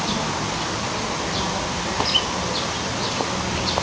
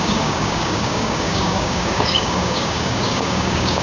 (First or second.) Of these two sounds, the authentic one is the first